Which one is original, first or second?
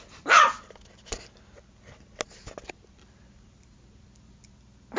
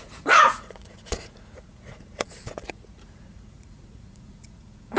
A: first